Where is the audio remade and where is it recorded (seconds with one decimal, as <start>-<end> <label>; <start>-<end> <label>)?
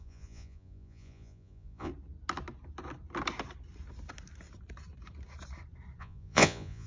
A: 0.0-1.9 remade; 1.9-6.0 recorded; 6.0-6.9 remade